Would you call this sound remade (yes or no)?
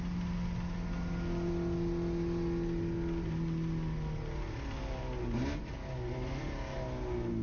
no